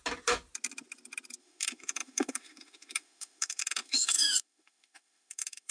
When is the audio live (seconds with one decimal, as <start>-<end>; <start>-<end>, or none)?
0.0-1.4